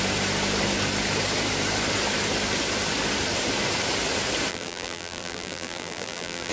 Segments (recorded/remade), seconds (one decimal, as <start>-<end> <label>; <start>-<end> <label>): 0.0-4.5 recorded; 4.5-6.5 remade